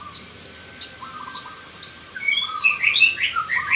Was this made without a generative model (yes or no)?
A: yes